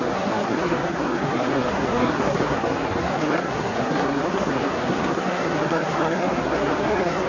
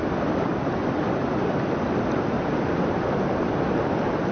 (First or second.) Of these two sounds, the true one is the second